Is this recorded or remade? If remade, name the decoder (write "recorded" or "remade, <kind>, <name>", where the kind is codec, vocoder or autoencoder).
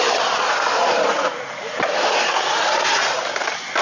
recorded